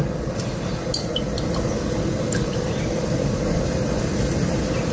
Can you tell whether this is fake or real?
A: real